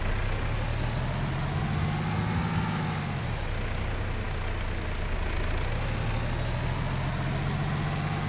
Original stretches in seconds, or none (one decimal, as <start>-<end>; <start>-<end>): 0.0-8.3